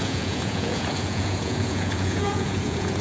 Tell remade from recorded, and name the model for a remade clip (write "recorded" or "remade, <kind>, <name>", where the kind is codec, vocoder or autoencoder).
remade, vocoder, Vocos